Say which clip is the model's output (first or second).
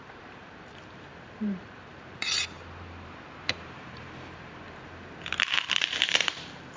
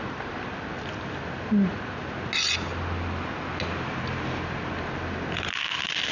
first